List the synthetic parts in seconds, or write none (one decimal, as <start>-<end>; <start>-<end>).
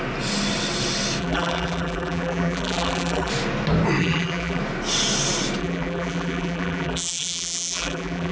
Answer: 1.2-3.3; 4.0-4.6; 5.6-8.3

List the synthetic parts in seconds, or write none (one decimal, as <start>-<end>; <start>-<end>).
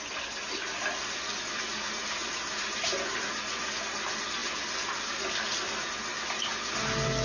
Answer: none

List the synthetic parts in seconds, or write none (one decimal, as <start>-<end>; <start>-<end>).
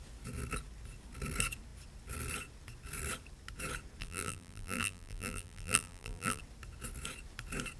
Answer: 4.0-6.4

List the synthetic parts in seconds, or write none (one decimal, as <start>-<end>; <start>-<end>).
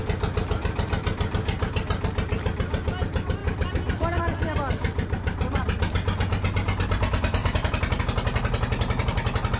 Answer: 3.4-4.2; 7.4-8.0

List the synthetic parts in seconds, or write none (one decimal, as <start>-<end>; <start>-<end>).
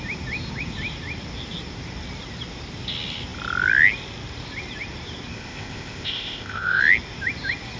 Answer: 5.3-6.8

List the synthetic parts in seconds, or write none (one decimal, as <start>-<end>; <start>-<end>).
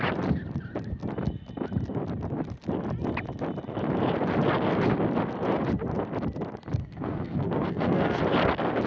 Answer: 6.8-8.2